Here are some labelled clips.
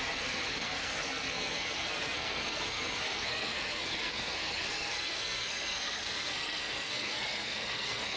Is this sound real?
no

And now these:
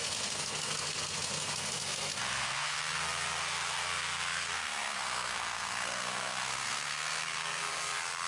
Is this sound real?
no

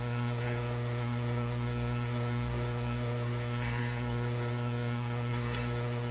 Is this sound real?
no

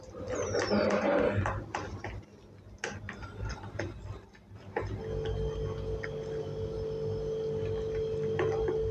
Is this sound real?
yes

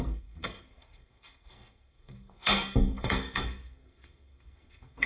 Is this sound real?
no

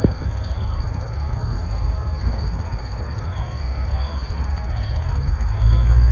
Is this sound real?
no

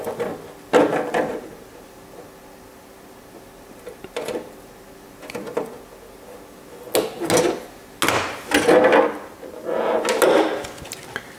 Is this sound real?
yes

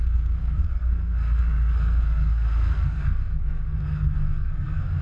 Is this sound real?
no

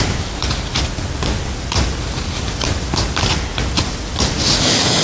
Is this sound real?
yes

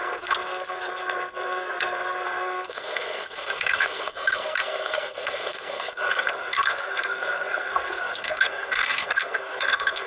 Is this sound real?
no